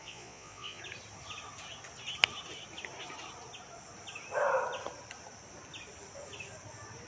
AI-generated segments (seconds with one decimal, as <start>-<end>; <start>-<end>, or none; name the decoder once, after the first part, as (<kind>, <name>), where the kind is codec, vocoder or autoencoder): 0.0-0.8 (vocoder, Vocos)